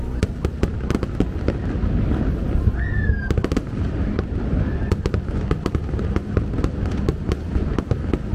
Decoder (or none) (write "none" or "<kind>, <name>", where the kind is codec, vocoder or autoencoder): none